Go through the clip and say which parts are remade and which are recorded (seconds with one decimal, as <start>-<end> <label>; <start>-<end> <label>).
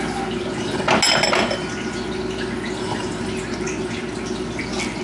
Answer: 0.0-5.0 recorded